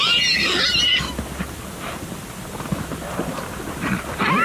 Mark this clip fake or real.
real